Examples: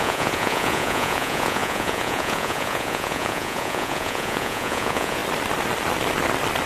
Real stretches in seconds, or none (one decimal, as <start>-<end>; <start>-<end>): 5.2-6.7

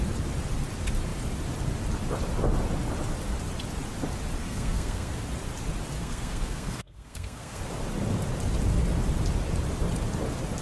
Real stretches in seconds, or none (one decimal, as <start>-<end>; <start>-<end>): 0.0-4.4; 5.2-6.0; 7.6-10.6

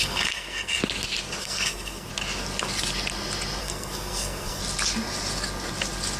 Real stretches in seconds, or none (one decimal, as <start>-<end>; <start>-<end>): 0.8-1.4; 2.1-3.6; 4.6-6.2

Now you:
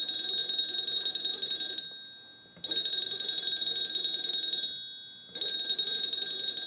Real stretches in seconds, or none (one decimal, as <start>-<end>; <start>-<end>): 0.0-6.7